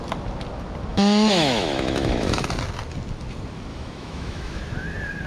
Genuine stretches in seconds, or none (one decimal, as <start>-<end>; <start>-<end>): 0.0-0.9; 2.4-3.7; 4.6-5.3

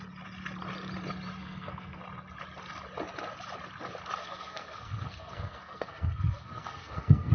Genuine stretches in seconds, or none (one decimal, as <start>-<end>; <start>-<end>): 0.0-1.4; 2.0-4.2

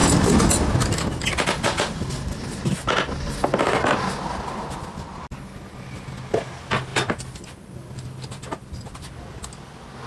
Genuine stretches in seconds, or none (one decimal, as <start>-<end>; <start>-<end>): 0.0-10.1

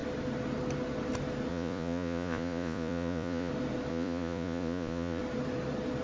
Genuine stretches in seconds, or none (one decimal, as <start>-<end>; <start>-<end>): 0.0-1.5; 3.5-3.9; 5.2-6.0

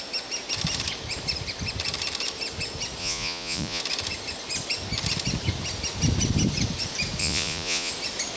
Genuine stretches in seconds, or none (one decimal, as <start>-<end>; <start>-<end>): 0.0-3.0; 3.8-7.2; 7.9-8.4

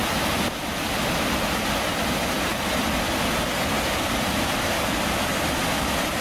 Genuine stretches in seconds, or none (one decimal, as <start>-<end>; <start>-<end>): 0.0-6.2

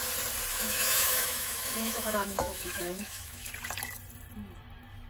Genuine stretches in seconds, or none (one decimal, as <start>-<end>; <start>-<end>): 0.0-0.5; 3.5-5.1